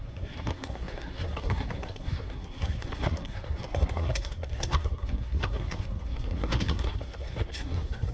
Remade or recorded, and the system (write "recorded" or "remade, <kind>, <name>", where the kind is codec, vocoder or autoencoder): remade, codec, SNAC